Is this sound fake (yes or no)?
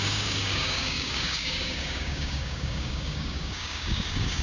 yes